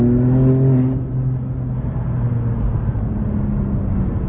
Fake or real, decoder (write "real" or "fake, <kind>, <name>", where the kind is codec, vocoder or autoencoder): real